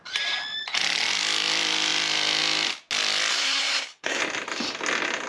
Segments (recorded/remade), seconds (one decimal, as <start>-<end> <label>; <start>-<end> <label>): 0.0-3.3 recorded; 3.3-4.2 remade; 4.2-5.3 recorded